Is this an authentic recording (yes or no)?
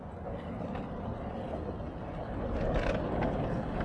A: yes